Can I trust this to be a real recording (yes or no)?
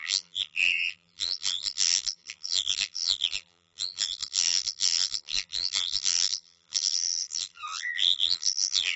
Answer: no